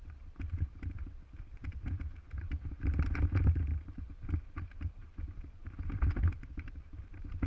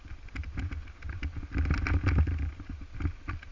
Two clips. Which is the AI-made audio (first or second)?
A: first